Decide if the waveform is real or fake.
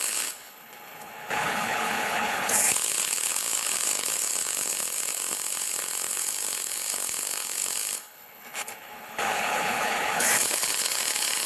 fake